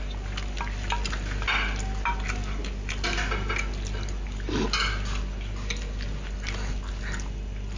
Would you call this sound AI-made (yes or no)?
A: no